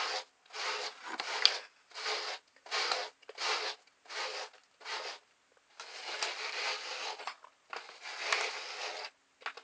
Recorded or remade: recorded